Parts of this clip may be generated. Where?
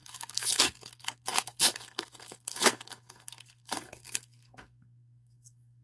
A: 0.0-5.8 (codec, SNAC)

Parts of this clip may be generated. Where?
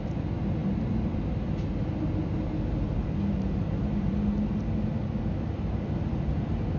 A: none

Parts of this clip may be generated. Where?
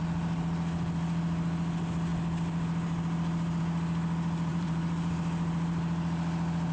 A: 4.5-5.1 (vocoder, BigVGAN v2)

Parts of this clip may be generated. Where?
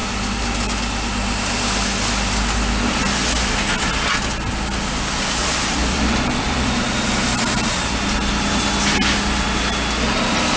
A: 5.4-6.9 (vocoder, BigVGAN v2)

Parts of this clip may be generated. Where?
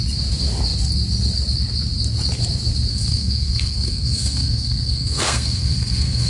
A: 2.9-6.3 (codec, SNAC)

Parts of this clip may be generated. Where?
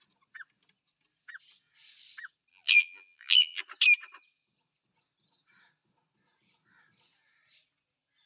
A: 2.5-3.6 (vocoder, BigVGAN v2)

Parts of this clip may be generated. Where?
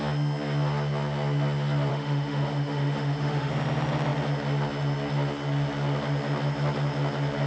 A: 1.9-3.5 (autoencoder, DAC-VAE)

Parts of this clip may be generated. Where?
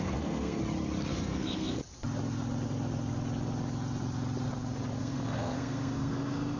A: 0.0-0.6 (codec, SNAC); 1.1-1.8; 5.0-6.6